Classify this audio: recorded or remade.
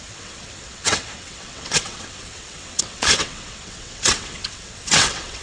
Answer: remade